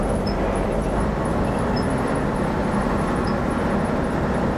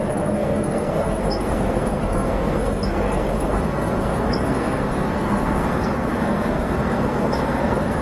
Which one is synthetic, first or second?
second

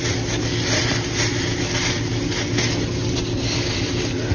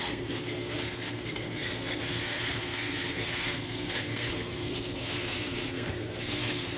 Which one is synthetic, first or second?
second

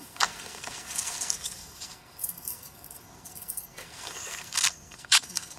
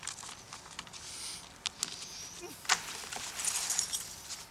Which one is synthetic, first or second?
first